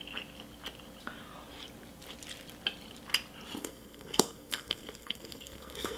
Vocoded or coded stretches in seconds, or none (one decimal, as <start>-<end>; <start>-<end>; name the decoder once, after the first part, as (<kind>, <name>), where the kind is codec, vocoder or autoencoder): 3.6-6.0 (codec, SNAC)